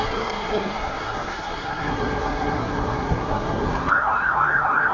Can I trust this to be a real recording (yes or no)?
no